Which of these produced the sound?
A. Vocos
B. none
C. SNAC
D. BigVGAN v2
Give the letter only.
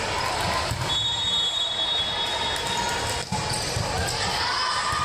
B